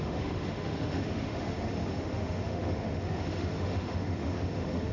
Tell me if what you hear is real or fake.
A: fake